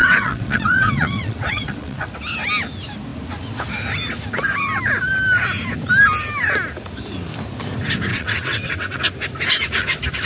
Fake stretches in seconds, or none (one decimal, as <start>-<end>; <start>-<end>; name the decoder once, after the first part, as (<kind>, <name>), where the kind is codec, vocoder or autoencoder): 0.0-2.1 (vocoder, WaveNeXt); 8.1-9.0

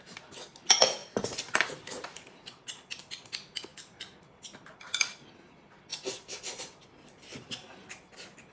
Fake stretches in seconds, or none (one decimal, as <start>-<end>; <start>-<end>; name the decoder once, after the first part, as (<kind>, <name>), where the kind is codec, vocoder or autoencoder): 1.0-2.7 (vocoder, BigVGAN v2); 7.3-8.0